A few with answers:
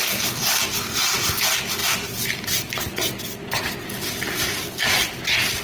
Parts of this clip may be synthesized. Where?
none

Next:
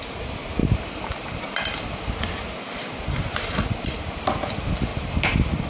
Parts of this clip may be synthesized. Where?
0.6-4.0 (vocoder, BigVGAN v2); 4.9-5.7

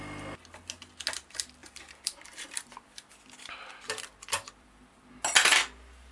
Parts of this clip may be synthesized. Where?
1.6-5.1 (vocoder, BigVGAN v2)

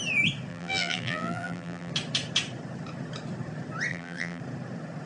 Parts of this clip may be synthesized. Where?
0.5-1.9 (vocoder, BigVGAN v2); 3.9-4.4